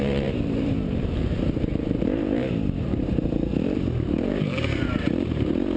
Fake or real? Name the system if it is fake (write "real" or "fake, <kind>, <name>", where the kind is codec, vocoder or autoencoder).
fake, vocoder, BigVGAN v2